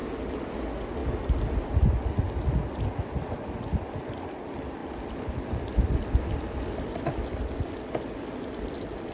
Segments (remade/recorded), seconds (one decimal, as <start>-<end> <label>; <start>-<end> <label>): 0.0-9.1 recorded